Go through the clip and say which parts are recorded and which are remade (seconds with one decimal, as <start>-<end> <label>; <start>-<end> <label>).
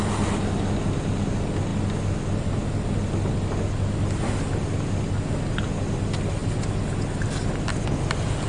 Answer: 0.0-8.5 recorded